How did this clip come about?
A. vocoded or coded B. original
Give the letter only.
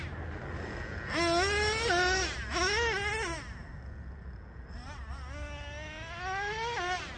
B